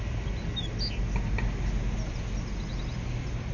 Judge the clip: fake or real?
real